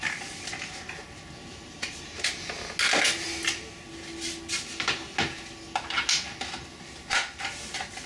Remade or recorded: recorded